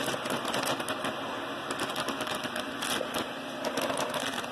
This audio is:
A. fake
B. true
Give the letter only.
B